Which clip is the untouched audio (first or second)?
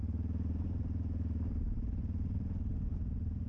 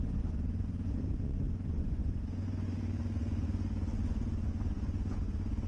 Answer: first